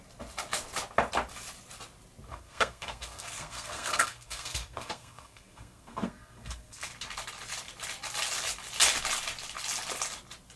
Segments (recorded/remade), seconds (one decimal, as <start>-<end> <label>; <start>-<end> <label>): 0.0-2.3 recorded; 2.3-6.9 remade; 6.9-10.6 recorded